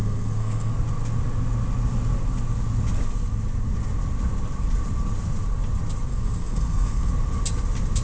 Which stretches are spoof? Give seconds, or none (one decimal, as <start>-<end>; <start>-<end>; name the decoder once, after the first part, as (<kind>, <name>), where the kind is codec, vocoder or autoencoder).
0.0-0.7 (codec, SNAC); 6.1-7.1